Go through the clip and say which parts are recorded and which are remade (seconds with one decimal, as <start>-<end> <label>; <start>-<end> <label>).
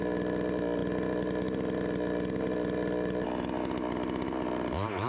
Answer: 0.0-5.1 recorded